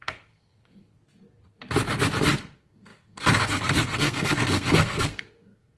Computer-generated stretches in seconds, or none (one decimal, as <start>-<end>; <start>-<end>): 0.0-1.0; 2.4-5.8